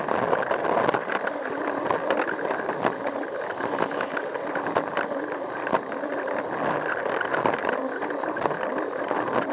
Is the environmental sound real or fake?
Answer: real